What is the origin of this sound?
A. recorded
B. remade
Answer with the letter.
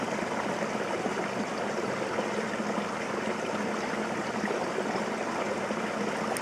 A